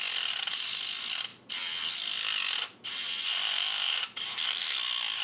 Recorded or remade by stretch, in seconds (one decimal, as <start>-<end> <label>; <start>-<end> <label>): 0.0-4.3 recorded; 4.3-4.8 remade; 4.8-5.2 recorded